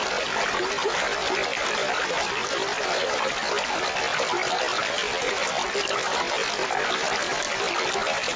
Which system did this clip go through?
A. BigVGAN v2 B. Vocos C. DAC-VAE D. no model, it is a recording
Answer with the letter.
D